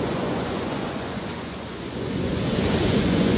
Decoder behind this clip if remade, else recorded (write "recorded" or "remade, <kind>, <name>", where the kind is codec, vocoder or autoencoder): remade, vocoder, Vocos